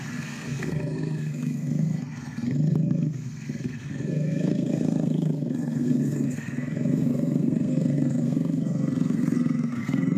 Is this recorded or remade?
remade